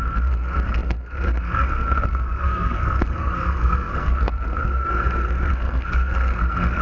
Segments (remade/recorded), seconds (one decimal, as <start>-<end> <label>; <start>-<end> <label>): 0.0-6.8 remade